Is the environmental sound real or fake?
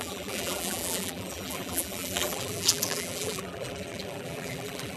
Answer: fake